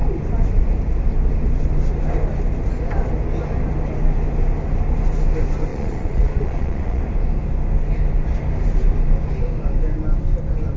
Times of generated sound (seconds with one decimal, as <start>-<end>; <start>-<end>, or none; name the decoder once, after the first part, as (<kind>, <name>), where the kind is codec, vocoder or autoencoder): 5.7-7.0 (vocoder, Vocos)